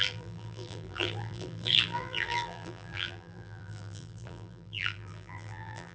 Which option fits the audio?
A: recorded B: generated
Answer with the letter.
B